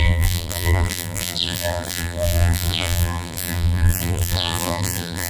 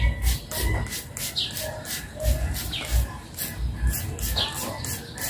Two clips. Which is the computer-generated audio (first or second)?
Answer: first